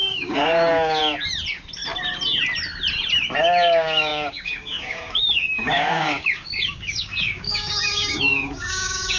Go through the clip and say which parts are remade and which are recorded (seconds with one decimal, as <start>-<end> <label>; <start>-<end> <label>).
0.0-1.0 remade; 1.0-3.4 recorded; 3.4-9.2 remade